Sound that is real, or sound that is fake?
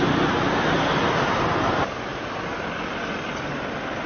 fake